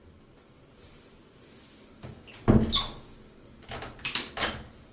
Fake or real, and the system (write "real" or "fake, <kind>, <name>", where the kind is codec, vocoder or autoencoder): real